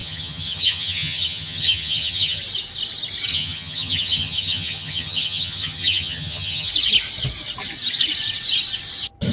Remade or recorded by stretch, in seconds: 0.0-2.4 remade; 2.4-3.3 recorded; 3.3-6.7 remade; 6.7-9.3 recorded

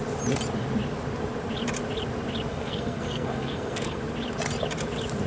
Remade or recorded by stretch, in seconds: 0.0-2.5 recorded; 2.5-4.0 remade; 4.0-5.3 recorded

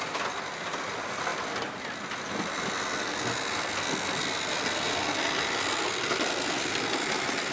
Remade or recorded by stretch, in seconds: 0.0-7.5 recorded

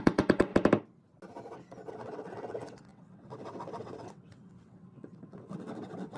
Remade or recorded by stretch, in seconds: 0.0-0.5 remade; 0.5-1.9 recorded; 1.9-6.2 remade

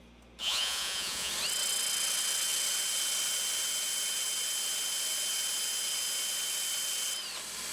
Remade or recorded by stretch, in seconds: 0.0-0.4 recorded; 0.4-1.3 remade; 1.3-7.7 recorded

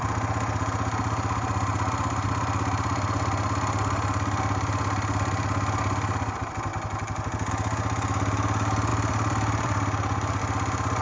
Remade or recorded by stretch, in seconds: 0.0-6.7 recorded; 6.7-7.5 remade; 7.5-8.9 recorded; 8.9-10.4 remade; 10.4-11.0 recorded

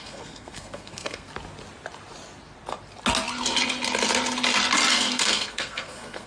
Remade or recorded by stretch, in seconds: 0.0-1.3 remade; 1.3-4.9 recorded; 4.9-6.3 remade